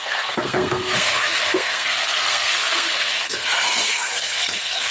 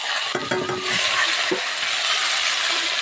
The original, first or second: second